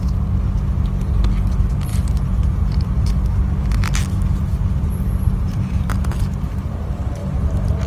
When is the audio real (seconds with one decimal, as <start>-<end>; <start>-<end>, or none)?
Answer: 0.0-1.9; 3.1-4.5; 6.4-7.2